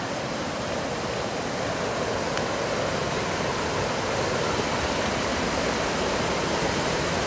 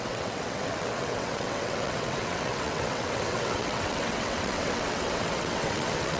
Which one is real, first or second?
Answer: first